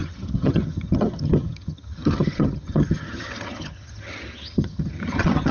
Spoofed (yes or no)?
yes